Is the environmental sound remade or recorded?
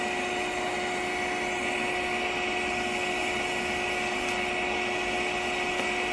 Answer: recorded